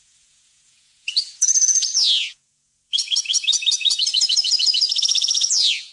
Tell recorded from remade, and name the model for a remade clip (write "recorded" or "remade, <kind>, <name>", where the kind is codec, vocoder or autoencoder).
remade, vocoder, Vocos